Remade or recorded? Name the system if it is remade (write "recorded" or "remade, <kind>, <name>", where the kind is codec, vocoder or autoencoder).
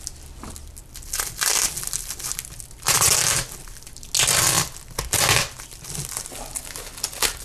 recorded